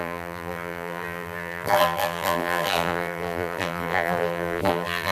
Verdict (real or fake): fake